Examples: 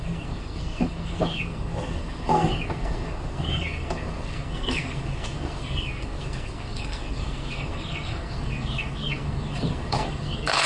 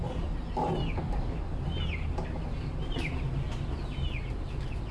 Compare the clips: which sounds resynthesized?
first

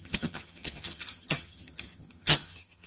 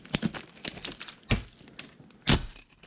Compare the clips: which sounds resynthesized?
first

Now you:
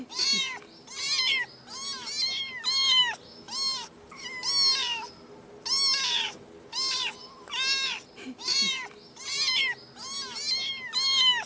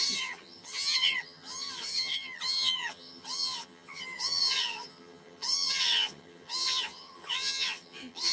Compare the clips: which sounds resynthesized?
second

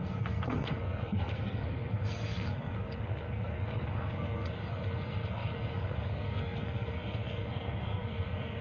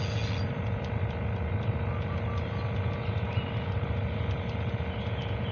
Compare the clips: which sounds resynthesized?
first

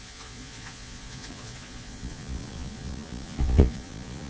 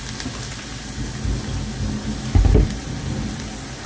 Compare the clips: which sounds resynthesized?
first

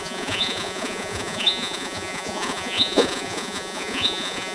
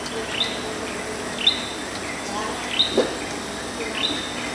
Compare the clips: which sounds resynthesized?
first